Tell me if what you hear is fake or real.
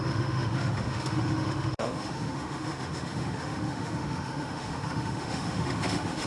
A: fake